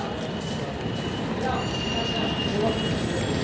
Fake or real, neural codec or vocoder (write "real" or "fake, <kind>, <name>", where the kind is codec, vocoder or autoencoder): real